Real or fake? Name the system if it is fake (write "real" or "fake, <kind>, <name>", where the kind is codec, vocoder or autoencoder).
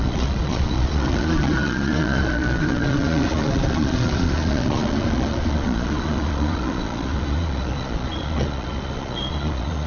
fake, vocoder, Vocos